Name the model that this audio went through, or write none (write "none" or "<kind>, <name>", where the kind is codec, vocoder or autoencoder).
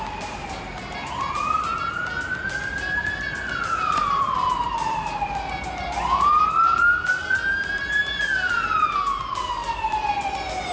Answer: none